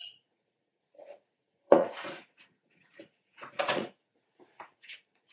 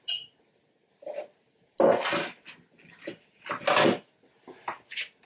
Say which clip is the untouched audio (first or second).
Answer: second